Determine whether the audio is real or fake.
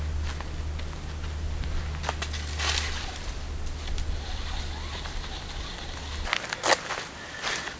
real